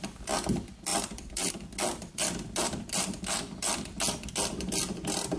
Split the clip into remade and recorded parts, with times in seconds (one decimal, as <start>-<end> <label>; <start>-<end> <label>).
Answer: 0.0-0.9 recorded; 0.9-1.5 remade; 1.5-2.0 recorded; 2.0-3.2 remade; 3.2-5.4 recorded